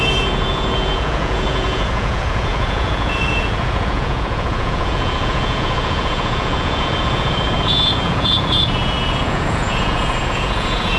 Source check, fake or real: fake